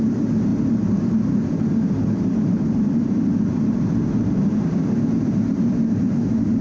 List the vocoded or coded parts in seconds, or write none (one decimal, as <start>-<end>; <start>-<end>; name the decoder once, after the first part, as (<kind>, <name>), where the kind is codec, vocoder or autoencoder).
0.0-6.6 (vocoder, BigVGAN v2)